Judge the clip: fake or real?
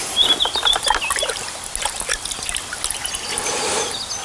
real